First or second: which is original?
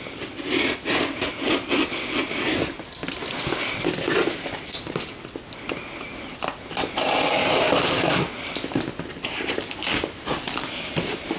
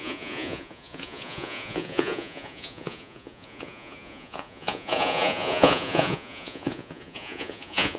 first